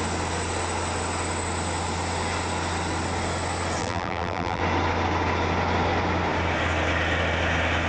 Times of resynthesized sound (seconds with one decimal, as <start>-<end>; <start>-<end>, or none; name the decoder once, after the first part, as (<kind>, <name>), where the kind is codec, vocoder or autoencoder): 3.8-4.6 (vocoder, BigVGAN v2)